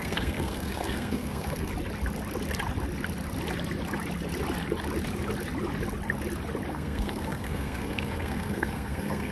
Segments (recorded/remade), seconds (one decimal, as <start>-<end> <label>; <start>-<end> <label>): 0.0-1.7 remade; 1.7-6.7 recorded; 6.7-9.3 remade